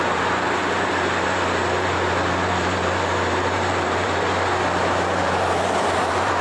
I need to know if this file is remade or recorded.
remade